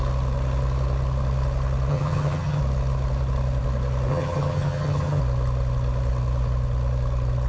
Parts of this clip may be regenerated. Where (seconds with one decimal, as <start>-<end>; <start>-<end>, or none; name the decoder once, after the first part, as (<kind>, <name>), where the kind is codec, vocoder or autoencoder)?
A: 1.9-2.6 (vocoder, HiFi-GAN); 4.1-5.2